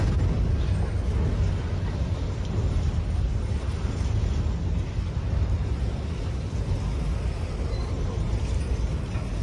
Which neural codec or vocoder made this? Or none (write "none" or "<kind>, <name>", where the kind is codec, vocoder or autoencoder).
none